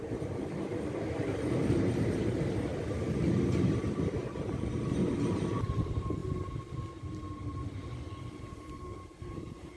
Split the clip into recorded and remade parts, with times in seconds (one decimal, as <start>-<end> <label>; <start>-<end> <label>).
0.0-2.7 remade; 2.7-3.6 recorded; 3.6-6.2 remade; 6.2-8.4 recorded; 8.4-9.8 remade